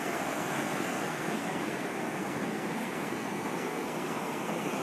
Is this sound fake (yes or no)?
yes